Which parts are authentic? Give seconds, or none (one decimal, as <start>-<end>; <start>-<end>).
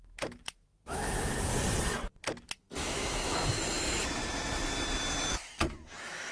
1.5-2.4; 4.2-5.3